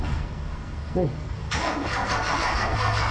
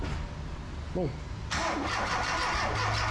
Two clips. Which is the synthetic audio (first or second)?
first